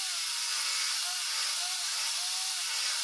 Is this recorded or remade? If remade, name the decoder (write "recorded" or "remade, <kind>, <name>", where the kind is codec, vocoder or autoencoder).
recorded